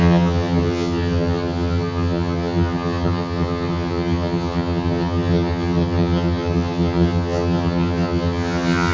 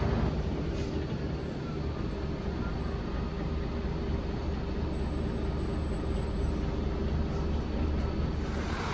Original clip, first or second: second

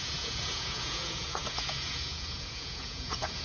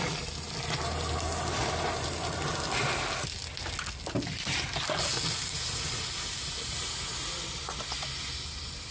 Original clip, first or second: second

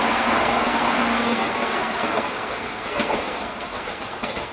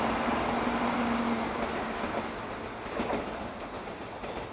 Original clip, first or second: second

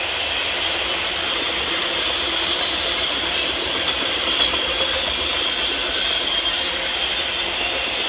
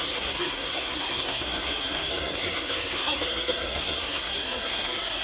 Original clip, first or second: first